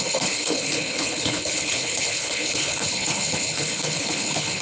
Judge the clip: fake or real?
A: fake